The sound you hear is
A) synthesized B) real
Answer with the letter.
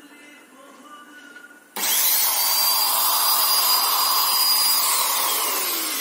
A